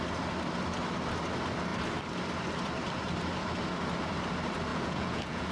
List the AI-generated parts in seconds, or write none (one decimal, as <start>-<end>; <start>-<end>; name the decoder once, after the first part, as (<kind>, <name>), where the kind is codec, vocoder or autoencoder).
4.7-5.5 (vocoder, Vocos)

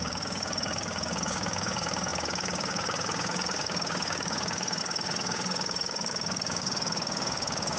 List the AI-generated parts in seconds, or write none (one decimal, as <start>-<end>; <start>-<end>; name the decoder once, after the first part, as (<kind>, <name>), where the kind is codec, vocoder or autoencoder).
0.0-7.8 (codec, DAC)

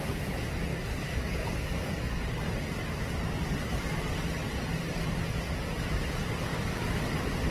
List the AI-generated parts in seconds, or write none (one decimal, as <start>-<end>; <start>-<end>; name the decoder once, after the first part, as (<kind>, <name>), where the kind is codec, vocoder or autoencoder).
0.7-2.3 (codec, DAC); 6.5-7.1

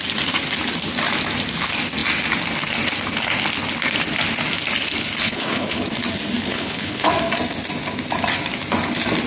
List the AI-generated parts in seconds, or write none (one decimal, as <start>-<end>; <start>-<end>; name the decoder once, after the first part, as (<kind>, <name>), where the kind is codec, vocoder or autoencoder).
5.2-5.8 (codec, HILCodec); 6.5-7.1

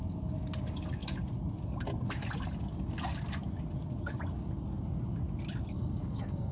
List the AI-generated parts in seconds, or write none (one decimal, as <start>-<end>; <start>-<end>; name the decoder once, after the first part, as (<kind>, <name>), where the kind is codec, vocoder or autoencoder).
5.7-6.5 (codec, SNAC)